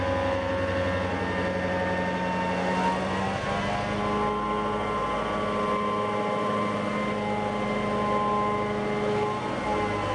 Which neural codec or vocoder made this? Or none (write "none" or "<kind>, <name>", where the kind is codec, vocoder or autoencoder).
none